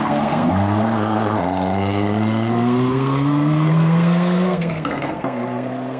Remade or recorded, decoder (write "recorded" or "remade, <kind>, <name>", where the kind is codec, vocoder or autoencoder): remade, codec, SNAC